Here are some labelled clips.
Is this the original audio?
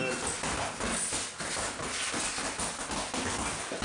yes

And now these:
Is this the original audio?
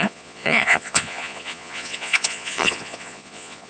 no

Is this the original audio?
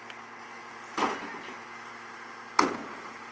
yes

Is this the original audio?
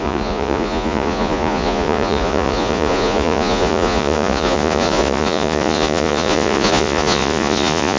no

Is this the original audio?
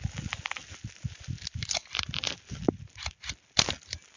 yes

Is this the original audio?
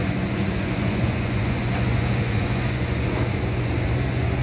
no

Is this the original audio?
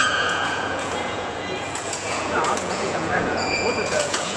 no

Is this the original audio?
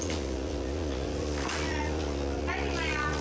no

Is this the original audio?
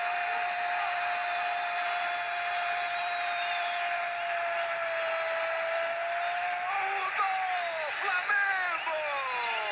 yes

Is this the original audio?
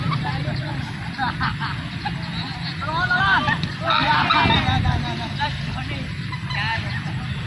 yes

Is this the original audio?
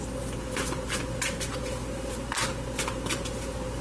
yes